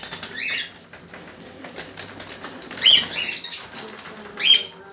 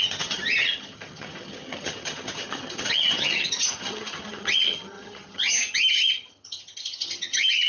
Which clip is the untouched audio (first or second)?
first